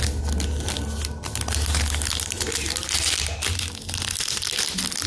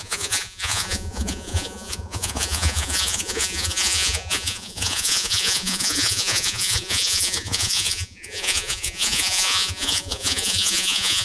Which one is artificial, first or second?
second